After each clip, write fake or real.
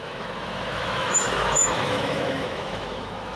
fake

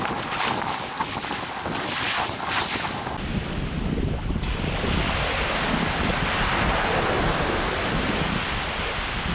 real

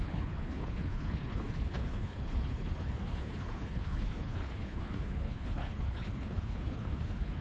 fake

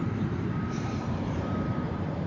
fake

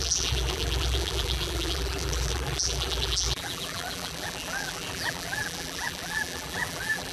fake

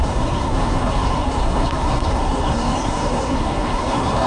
fake